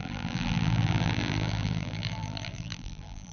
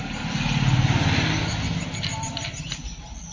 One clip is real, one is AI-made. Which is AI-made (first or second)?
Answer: first